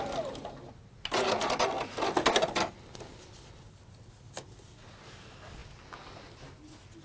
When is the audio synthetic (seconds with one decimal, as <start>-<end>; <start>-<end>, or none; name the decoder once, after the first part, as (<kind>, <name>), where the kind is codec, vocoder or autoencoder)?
none